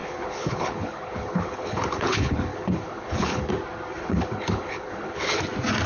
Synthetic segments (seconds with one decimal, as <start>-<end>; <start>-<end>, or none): 0.0-3.5; 4.0-5.4